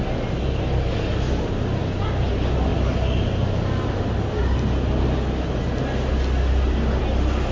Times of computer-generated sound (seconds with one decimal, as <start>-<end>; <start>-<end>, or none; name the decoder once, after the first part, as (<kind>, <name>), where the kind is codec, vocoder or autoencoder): none